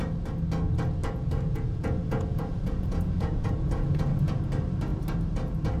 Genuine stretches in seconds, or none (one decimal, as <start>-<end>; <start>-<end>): 0.0-1.0; 4.5-5.8